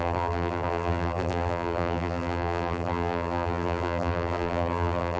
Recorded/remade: remade